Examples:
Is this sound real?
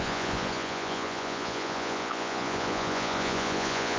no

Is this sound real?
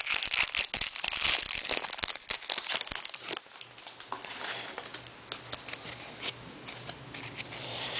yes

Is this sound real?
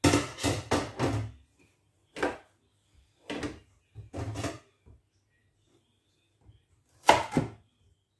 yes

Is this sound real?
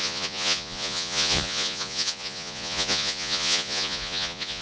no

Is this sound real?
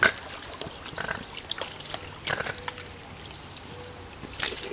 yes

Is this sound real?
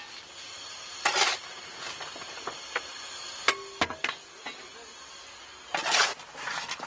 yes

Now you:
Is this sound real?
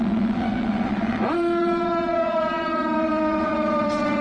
no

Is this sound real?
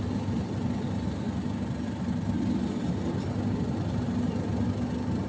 yes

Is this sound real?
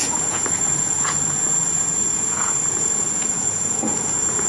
no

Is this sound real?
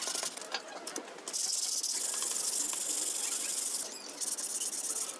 yes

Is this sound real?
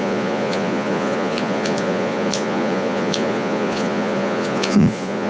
no